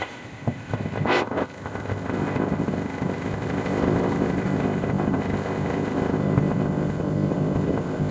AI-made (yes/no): yes